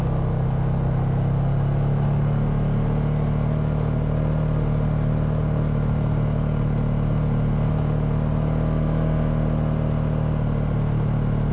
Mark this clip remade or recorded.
recorded